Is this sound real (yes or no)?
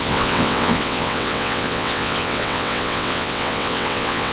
no